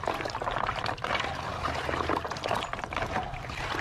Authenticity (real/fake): real